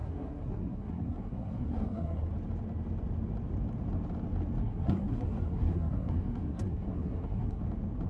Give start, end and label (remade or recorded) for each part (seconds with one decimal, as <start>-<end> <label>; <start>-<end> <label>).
0.0-2.3 remade; 2.3-4.6 recorded; 4.6-7.6 remade; 7.6-8.1 recorded